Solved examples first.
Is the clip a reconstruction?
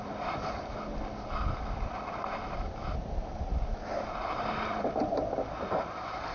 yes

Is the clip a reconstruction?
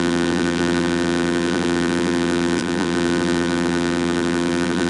yes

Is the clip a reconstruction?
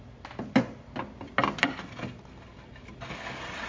no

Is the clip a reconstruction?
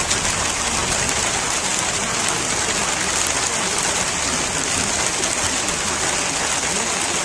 no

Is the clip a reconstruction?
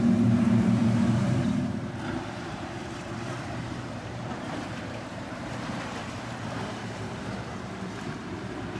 yes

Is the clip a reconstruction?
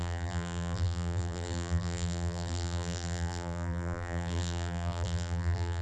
yes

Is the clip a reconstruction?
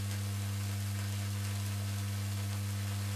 no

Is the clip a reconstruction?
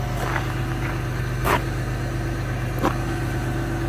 no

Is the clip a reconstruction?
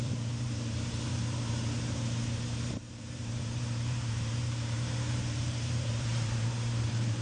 yes